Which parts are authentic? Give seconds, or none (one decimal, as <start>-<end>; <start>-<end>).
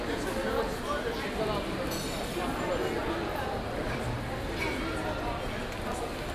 0.0-3.0; 4.5-6.3